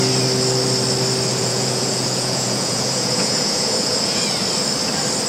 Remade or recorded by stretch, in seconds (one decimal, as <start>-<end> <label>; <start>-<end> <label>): 0.0-1.3 recorded; 1.3-4.2 remade; 4.2-5.3 recorded